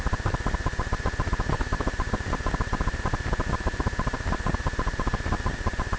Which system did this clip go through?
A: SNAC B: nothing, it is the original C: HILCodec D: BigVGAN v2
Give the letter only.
D